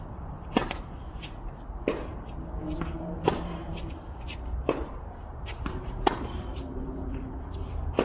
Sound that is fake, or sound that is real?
fake